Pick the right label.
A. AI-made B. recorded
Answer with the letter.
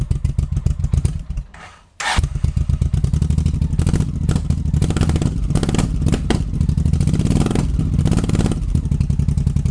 B